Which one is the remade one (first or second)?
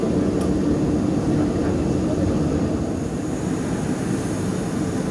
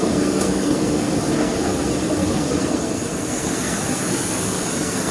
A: second